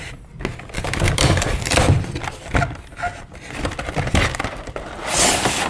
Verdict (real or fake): real